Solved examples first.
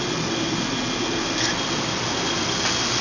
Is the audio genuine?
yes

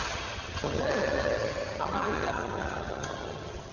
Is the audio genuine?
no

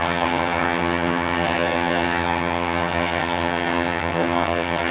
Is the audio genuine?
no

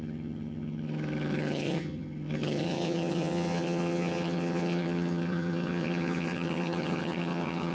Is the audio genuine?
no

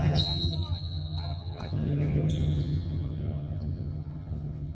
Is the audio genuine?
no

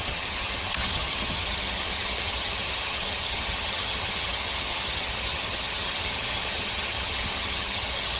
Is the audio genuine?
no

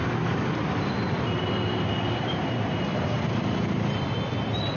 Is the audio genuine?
yes